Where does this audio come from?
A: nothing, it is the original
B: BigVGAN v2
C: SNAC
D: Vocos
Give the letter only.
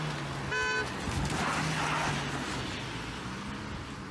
A